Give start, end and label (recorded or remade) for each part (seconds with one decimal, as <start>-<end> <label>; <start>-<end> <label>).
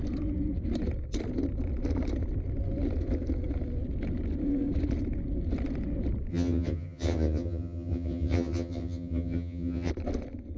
0.0-6.3 recorded; 6.3-9.9 remade; 9.9-10.6 recorded